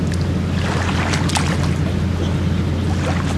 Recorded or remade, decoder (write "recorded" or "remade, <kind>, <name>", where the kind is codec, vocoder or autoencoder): recorded